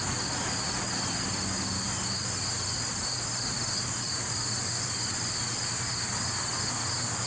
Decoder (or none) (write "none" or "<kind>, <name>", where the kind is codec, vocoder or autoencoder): none